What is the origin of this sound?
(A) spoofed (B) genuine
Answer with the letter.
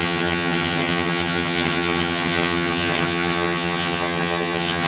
A